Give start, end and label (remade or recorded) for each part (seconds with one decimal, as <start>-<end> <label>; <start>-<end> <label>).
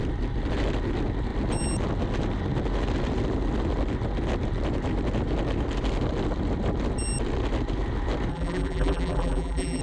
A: 0.0-8.3 recorded; 8.3-9.8 remade